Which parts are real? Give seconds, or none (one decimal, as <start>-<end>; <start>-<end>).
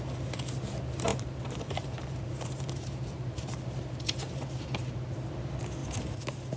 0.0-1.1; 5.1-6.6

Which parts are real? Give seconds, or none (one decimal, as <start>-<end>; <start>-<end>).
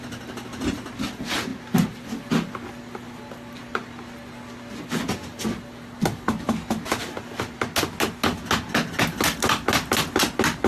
0.0-10.7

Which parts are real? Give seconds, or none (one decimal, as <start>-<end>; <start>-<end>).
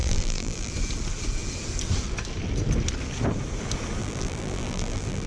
0.7-4.0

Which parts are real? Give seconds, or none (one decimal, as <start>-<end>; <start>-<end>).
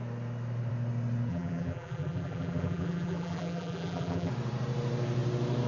0.0-1.3; 4.3-5.7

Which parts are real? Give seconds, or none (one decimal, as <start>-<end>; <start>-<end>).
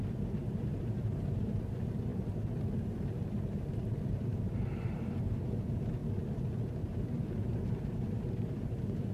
6.0-6.8